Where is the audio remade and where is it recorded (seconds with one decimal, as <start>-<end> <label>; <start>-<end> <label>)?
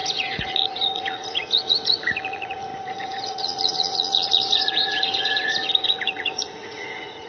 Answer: 0.0-7.3 remade